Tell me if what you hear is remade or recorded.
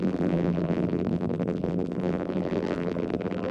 remade